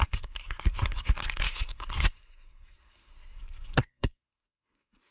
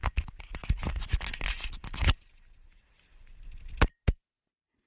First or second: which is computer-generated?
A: first